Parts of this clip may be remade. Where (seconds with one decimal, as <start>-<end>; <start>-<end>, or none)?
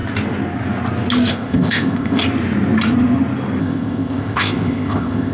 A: 1.3-2.2; 3.6-5.3